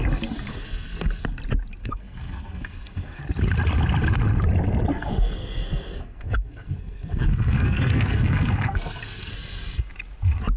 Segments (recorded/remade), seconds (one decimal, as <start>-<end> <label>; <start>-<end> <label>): 0.0-0.5 recorded; 0.5-1.2 remade; 1.2-1.8 recorded; 1.8-3.2 remade; 3.2-4.9 recorded; 4.9-9.3 remade; 9.3-10.6 recorded